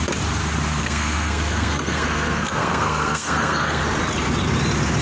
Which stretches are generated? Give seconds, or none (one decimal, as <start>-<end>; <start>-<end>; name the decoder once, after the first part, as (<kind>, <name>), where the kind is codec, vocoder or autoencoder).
0.8-3.8 (codec, SNAC)